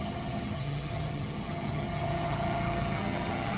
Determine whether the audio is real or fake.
fake